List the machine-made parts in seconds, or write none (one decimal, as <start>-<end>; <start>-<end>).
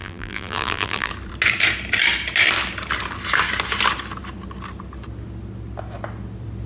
0.0-1.1